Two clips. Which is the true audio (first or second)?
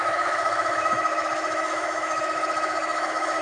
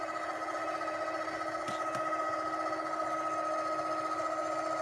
second